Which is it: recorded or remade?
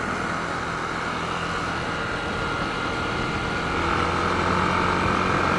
recorded